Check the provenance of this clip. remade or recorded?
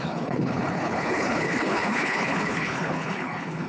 remade